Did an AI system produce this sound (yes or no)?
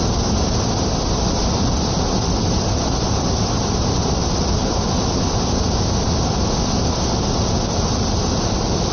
no